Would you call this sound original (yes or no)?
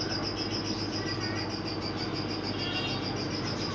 yes